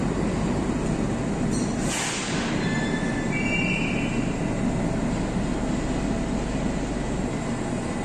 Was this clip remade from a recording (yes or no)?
no